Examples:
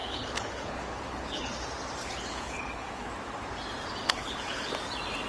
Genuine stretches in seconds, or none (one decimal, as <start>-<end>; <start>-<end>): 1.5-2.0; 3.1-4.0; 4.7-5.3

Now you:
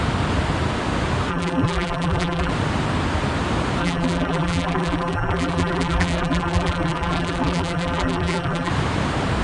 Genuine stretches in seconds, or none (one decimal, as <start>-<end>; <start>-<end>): 0.0-1.3; 2.5-3.8; 8.7-9.4

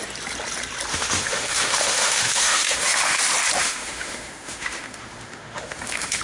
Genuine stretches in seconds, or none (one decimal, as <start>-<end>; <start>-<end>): 0.0-0.9; 3.2-3.6

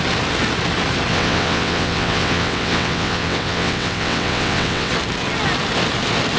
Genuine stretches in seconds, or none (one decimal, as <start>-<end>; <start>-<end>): 0.0-1.1; 4.9-6.4

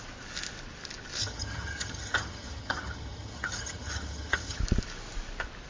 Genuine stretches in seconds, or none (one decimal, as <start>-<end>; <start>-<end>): 0.0-1.2; 4.6-5.7

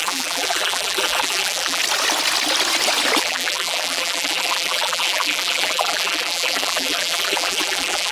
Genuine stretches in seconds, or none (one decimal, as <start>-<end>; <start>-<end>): 1.8-3.2

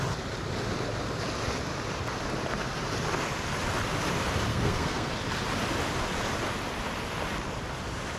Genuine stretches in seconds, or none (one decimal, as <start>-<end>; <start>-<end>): 0.0-4.5; 5.1-8.2